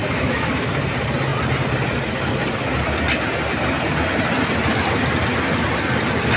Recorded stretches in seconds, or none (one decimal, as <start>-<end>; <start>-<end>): 0.7-6.4